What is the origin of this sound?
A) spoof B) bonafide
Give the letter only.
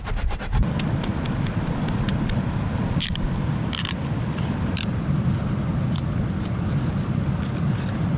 B